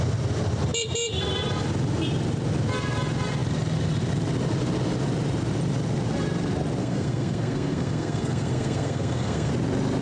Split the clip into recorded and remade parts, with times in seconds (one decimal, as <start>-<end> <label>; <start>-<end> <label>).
0.0-6.8 recorded; 6.8-9.5 remade; 9.5-10.0 recorded